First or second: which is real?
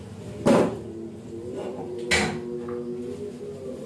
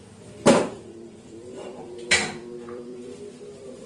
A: first